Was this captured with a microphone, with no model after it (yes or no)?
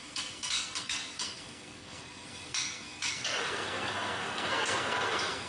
no